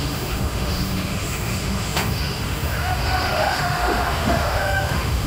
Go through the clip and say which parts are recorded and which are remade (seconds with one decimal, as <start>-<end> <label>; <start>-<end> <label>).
0.0-5.3 remade